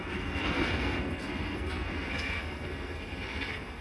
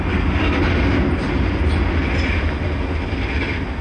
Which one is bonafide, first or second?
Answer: second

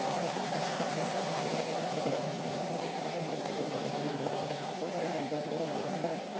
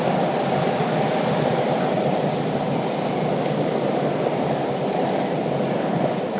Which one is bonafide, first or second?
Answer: second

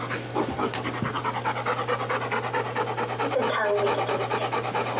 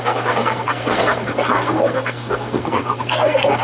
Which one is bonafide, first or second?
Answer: first